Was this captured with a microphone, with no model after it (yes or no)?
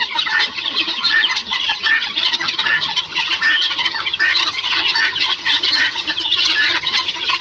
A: no